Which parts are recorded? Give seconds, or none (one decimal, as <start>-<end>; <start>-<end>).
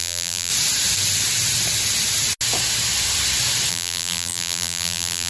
0.5-3.7